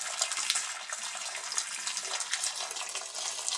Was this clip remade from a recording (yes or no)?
no